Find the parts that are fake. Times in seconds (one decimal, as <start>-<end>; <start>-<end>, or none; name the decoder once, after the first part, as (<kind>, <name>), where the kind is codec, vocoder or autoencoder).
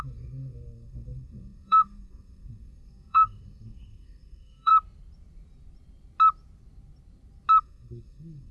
0.0-4.7 (codec, SNAC); 7.6-8.5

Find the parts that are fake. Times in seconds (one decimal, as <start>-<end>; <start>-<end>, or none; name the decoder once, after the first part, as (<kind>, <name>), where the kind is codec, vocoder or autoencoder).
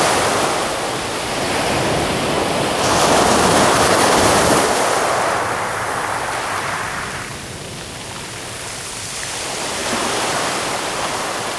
none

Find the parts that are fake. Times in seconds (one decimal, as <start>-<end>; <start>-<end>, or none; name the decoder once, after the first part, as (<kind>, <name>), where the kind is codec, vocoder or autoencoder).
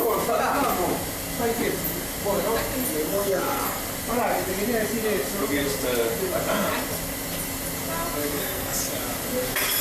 3.1-3.8 (codec, SNAC); 8.2-8.8